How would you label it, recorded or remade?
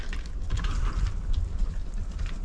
recorded